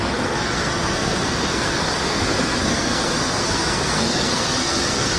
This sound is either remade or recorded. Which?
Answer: remade